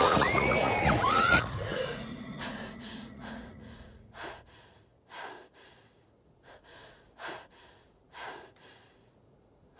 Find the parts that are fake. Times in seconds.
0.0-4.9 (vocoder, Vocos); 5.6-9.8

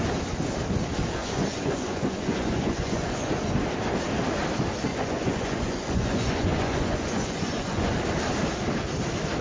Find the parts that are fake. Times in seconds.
1.2-3.3 (vocoder, Vocos); 4.9-7.9

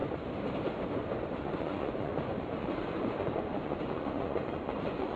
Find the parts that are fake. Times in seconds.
1.4-5.2 (vocoder, Vocos)

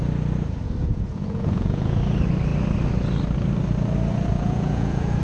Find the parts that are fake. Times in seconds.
0.8-2.0 (vocoder, Vocos); 4.3-5.2

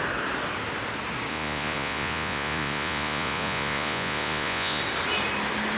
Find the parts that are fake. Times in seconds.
1.3-4.8 (vocoder, Vocos)

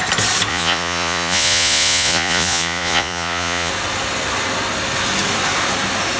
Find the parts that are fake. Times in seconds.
0.5-3.7 (vocoder, Vocos)

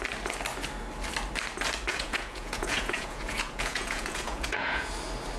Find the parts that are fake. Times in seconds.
1.9-4.9 (vocoder, Vocos)